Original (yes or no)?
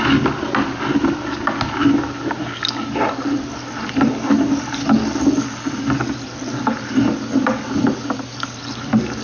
yes